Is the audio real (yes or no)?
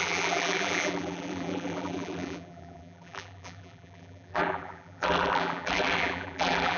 no